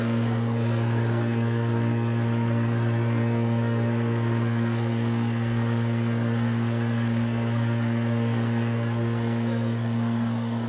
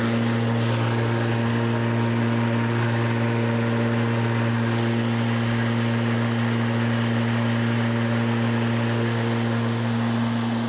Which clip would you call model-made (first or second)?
first